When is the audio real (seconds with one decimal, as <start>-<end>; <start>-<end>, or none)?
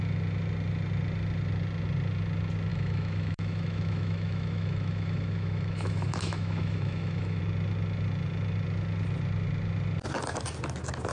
0.0-2.7; 7.4-11.1